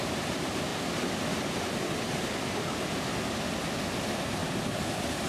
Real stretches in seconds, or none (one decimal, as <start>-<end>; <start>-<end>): 0.7-3.9; 4.4-5.3